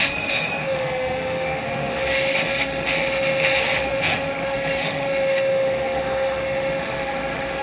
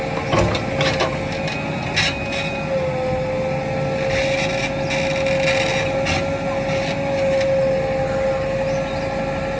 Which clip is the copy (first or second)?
first